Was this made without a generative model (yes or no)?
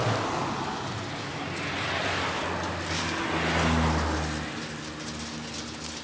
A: yes